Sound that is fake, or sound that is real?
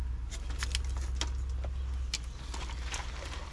real